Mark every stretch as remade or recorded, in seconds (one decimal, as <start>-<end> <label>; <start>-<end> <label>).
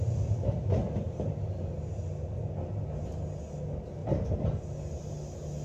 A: 0.0-4.0 recorded; 4.0-4.6 remade; 4.6-5.6 recorded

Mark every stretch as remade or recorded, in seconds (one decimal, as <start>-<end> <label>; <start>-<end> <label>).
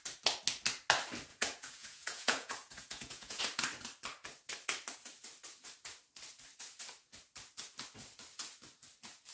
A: 0.0-1.3 recorded; 1.3-3.4 remade; 3.4-9.3 recorded